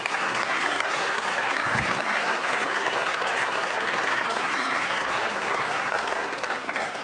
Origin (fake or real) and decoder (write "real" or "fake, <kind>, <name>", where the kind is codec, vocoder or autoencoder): fake, codec, SNAC